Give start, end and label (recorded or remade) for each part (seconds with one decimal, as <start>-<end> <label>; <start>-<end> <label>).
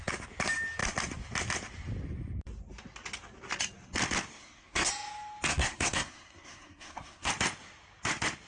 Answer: 0.0-4.4 recorded; 4.4-4.9 remade; 4.9-5.5 recorded; 5.5-7.3 remade; 7.3-8.5 recorded